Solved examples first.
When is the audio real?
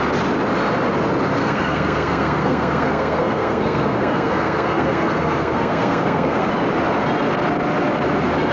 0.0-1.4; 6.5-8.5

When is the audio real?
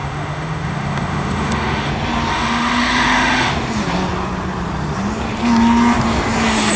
1.9-2.3; 3.5-6.8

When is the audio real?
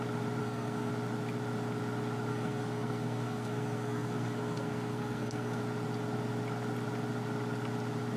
0.0-0.4; 0.9-2.3; 5.6-8.2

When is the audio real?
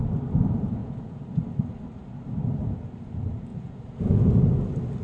0.0-0.8; 1.4-3.5; 4.4-5.0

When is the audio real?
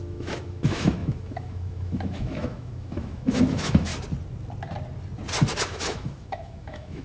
3.9-5.6